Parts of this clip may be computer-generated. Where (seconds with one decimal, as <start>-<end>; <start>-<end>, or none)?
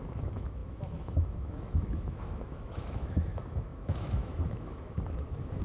0.0-5.6